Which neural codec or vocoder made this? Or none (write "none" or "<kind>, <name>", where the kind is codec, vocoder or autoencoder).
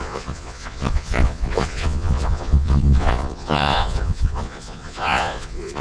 vocoder, Vocos